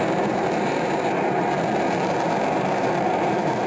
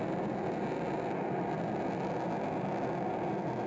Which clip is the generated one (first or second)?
first